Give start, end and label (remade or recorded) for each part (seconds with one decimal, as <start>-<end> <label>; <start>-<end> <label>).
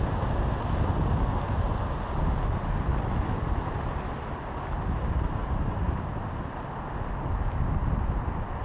0.0-5.4 recorded; 5.4-6.1 remade; 6.1-8.6 recorded